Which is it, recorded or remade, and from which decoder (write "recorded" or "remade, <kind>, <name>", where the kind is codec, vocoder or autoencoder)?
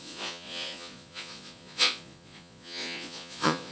remade, vocoder, Vocos